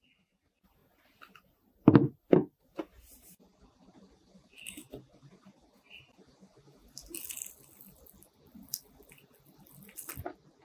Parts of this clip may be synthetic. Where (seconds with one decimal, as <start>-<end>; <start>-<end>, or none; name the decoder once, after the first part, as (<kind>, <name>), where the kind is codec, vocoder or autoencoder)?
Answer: none

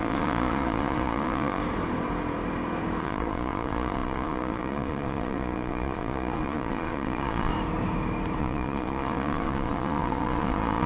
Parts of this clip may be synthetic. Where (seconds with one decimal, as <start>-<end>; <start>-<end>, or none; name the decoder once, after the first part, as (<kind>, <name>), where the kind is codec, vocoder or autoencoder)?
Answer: 0.0-1.6 (vocoder, Vocos); 3.0-7.5; 8.4-10.9

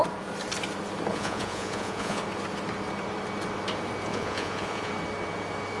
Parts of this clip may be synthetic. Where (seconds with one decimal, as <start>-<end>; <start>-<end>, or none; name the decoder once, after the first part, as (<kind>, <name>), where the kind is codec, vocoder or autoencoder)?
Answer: 1.1-2.2 (vocoder, Vocos); 4.1-4.9

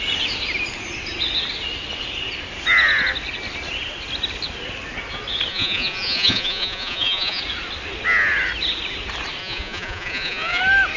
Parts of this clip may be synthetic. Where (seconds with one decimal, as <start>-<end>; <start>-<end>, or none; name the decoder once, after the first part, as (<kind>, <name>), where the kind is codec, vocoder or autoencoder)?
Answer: 5.5-7.4 (vocoder, Vocos); 9.4-10.6